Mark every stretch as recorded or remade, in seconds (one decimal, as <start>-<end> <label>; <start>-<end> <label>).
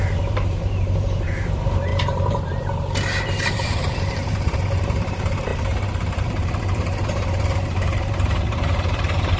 0.0-9.4 remade